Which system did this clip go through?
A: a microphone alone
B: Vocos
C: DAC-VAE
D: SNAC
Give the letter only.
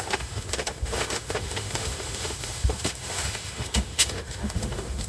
C